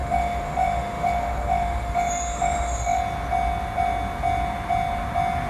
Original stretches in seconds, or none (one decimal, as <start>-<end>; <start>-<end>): 3.0-5.5